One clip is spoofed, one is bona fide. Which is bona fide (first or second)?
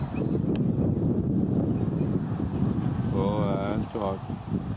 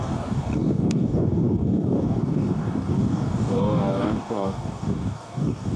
first